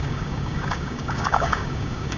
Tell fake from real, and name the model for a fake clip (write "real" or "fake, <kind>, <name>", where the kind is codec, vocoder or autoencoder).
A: fake, codec, DAC